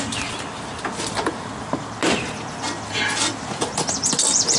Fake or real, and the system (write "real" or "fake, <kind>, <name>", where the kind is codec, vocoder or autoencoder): real